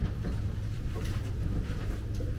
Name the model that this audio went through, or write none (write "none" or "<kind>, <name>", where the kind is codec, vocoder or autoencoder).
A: vocoder, BigVGAN v2